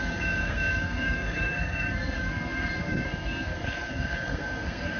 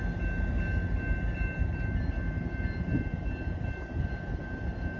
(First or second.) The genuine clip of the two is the second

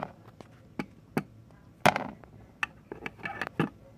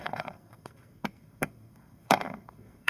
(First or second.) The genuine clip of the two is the first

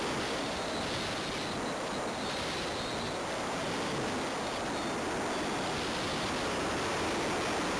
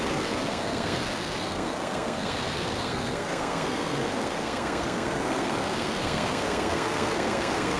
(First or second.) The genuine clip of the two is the first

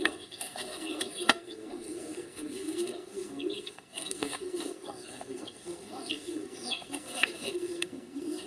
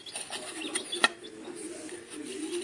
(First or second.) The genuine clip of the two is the second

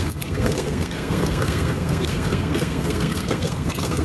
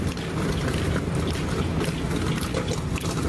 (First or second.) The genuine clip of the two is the second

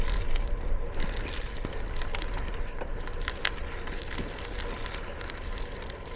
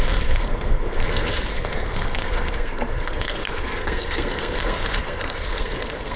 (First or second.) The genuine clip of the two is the first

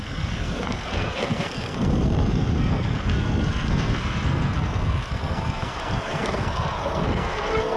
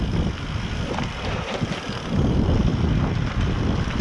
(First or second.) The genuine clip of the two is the second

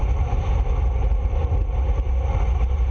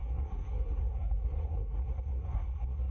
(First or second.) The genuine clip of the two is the first